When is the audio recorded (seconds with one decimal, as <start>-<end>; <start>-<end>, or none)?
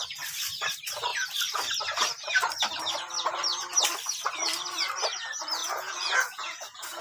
0.0-5.6